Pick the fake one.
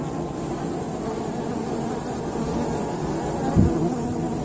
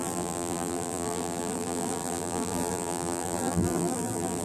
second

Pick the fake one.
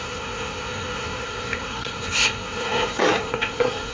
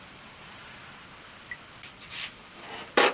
first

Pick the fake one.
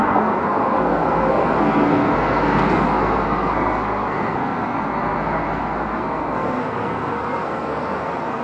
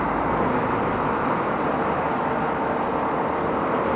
first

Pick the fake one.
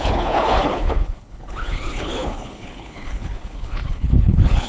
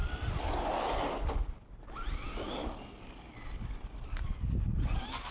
first